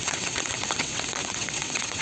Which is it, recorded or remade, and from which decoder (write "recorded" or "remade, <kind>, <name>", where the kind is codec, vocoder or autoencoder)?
remade, vocoder, WaveNeXt